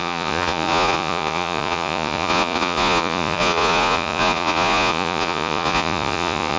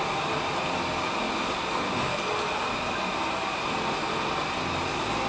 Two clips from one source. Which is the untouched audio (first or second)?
second